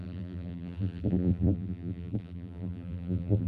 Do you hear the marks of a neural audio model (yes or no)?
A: yes